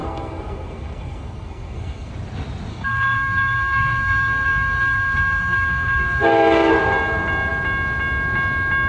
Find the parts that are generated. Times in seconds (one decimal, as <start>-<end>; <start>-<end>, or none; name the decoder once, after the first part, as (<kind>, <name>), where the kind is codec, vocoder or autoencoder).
0.0-2.1 (codec, SNAC); 2.7-6.7